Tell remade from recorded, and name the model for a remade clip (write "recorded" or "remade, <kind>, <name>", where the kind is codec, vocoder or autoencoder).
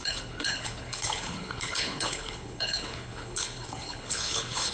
remade, codec, HILCodec